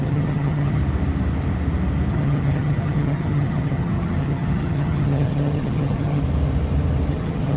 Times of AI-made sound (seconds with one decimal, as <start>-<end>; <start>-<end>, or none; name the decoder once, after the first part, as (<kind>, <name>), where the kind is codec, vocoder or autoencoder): 0.0-0.8 (vocoder, HiFi-GAN); 2.1-6.2; 7.1-7.6